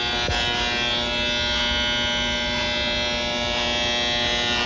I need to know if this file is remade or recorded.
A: recorded